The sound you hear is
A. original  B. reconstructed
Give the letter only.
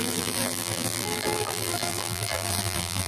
B